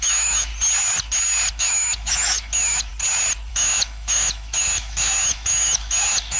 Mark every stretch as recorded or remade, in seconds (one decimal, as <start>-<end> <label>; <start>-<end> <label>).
0.0-0.5 remade; 0.5-1.5 recorded; 1.5-2.9 remade; 2.9-3.5 recorded; 3.5-6.4 remade